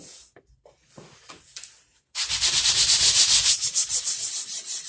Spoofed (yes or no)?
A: no